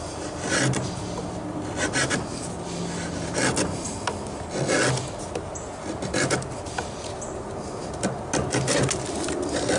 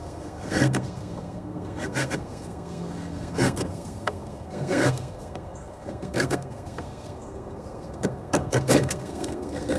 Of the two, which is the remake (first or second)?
second